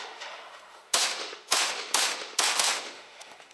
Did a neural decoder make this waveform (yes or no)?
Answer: yes